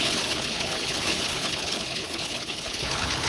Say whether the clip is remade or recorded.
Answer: remade